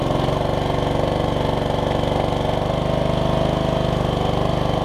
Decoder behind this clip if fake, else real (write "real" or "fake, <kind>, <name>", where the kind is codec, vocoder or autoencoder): real